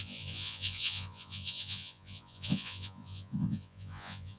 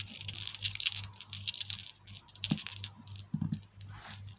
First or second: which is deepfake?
first